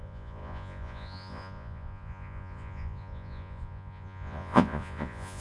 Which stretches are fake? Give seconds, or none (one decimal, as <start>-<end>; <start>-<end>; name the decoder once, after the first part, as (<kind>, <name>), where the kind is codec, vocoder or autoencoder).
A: 0.0-5.4 (vocoder, Vocos)